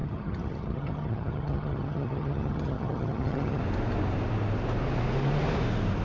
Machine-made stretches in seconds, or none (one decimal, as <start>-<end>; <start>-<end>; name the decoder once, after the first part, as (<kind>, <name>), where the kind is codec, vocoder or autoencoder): 0.0-3.6 (vocoder, HiFi-GAN)